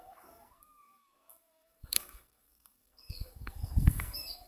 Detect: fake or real fake